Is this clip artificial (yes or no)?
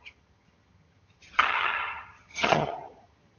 yes